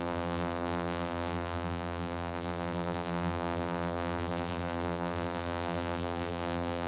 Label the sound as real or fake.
fake